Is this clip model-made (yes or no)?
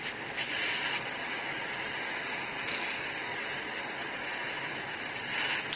no